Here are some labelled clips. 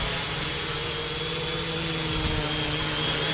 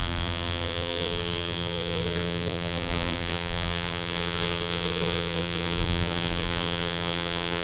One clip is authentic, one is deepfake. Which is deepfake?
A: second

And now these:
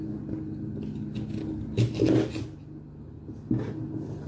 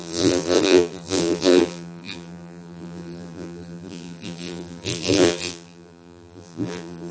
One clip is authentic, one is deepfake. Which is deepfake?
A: second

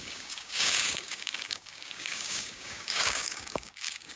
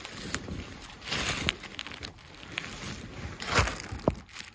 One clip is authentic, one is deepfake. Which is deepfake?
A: first